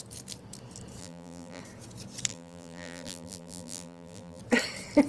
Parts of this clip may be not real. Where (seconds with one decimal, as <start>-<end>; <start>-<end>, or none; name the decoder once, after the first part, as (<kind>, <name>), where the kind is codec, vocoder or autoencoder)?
1.0-1.6 (vocoder, BigVGAN v2); 2.3-4.4